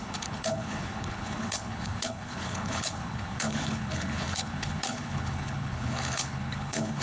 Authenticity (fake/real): fake